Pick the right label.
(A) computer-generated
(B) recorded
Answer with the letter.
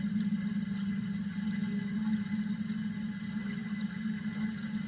B